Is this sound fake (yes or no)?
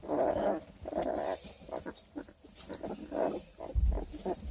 no